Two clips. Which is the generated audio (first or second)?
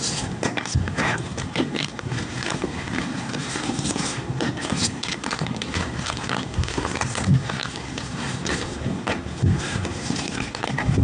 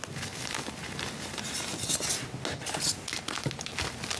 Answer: first